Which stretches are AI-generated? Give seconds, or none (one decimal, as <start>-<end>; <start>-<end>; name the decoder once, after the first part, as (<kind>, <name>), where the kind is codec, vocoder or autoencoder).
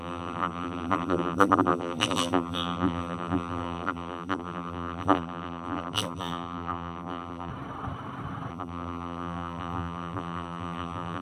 0.0-7.5 (vocoder, BigVGAN v2); 8.5-11.2